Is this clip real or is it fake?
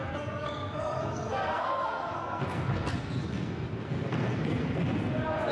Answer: fake